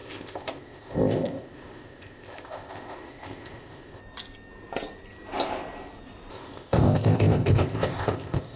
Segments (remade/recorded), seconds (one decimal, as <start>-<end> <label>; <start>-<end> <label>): 0.0-4.0 remade; 4.0-6.3 recorded; 6.3-8.6 remade